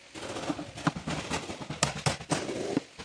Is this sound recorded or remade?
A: recorded